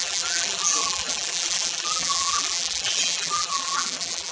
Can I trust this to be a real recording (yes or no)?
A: no